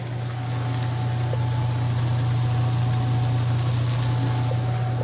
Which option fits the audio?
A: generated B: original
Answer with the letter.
B